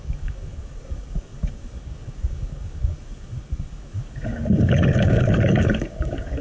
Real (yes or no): no